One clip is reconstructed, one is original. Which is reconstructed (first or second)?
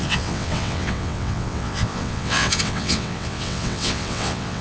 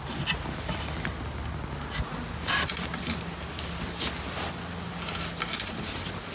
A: first